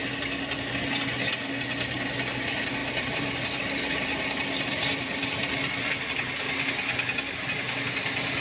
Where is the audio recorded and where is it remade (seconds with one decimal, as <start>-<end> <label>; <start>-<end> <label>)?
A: 0.0-0.7 remade; 0.7-2.8 recorded; 2.8-6.1 remade; 6.1-8.4 recorded